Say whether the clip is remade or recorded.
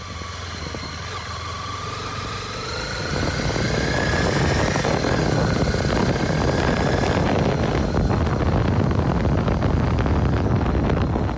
recorded